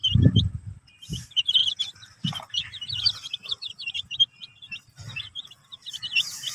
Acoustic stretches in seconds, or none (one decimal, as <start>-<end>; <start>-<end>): none